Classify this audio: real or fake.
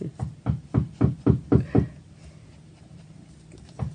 real